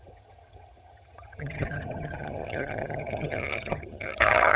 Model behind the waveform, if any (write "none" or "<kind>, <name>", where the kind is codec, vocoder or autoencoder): vocoder, HiFi-GAN